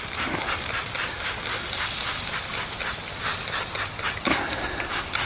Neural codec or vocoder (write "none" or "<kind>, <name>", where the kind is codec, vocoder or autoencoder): none